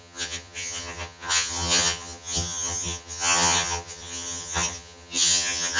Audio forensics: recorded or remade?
remade